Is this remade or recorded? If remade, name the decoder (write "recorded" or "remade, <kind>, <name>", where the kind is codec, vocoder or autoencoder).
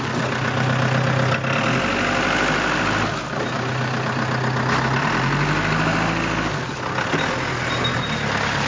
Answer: recorded